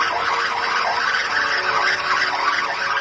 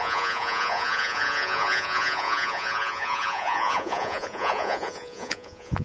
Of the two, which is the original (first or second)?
first